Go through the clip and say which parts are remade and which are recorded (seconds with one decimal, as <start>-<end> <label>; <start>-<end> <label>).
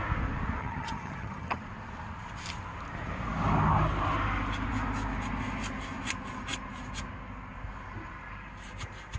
0.0-0.6 recorded; 0.6-1.6 remade; 1.6-9.2 recorded